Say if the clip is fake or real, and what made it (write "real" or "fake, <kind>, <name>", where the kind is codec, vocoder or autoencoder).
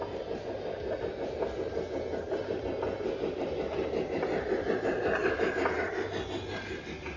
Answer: real